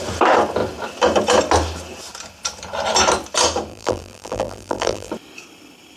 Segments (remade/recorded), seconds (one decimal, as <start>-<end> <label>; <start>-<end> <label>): 0.0-3.7 recorded; 3.7-5.1 remade; 5.1-6.0 recorded